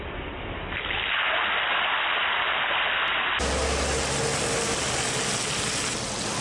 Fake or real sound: real